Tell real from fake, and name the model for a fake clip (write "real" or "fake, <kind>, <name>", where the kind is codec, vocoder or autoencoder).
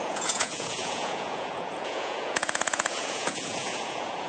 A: fake, vocoder, Vocos